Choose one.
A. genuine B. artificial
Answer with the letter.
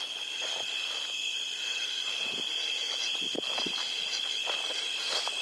A